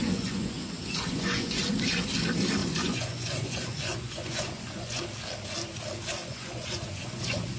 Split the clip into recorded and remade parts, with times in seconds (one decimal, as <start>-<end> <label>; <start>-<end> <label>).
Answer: 0.0-1.6 remade; 1.6-2.6 recorded; 2.6-5.0 remade; 5.0-6.2 recorded; 6.2-7.6 remade